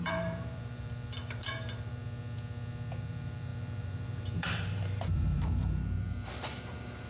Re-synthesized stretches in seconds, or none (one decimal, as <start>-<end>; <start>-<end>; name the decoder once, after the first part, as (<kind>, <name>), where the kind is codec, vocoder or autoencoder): 0.0-2.0 (vocoder, BigVGAN v2); 3.0-7.1